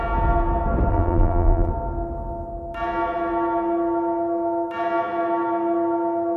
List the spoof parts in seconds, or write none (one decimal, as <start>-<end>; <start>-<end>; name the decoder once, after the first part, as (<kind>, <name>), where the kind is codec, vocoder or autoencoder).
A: 0.9-1.7 (vocoder, BigVGAN v2)